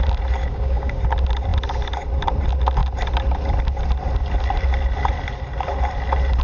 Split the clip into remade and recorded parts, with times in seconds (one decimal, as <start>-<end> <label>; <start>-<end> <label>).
0.0-0.4 recorded; 0.4-1.0 remade; 1.0-6.4 recorded